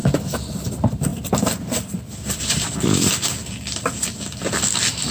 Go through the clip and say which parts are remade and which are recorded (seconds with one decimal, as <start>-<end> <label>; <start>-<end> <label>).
0.0-5.1 remade